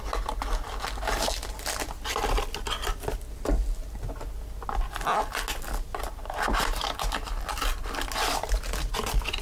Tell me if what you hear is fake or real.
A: real